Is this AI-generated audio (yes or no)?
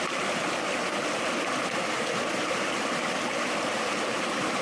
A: no